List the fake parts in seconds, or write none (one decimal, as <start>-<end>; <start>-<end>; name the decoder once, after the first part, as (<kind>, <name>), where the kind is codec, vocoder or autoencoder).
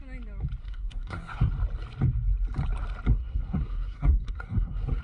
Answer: 0.6-1.5 (codec, SNAC); 3.1-5.0